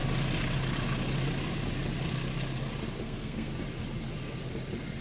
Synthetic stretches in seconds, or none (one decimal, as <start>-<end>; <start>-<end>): 3.0-3.5